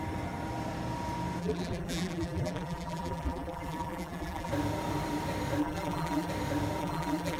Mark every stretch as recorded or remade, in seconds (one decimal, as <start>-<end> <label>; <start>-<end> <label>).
0.0-1.4 recorded; 1.4-4.5 remade; 4.5-5.6 recorded; 5.6-6.3 remade; 6.3-6.8 recorded; 6.8-7.4 remade